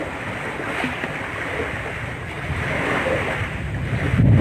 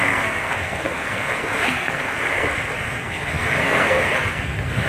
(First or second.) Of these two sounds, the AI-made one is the second